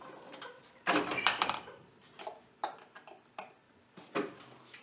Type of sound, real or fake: real